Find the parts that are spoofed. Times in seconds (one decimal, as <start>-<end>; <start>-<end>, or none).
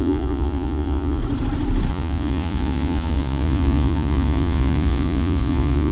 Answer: 0.0-1.2; 1.9-5.9